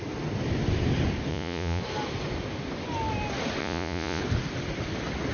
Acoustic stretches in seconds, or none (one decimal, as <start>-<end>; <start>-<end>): 0.0-1.3; 1.8-3.6; 4.2-5.3